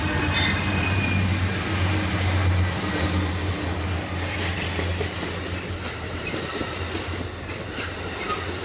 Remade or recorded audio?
recorded